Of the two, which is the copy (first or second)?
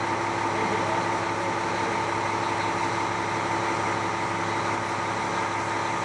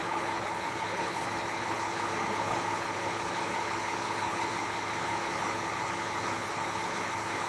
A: second